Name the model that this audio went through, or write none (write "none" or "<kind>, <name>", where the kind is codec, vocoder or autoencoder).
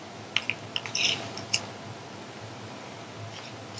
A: none